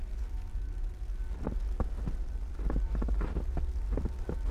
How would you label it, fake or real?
real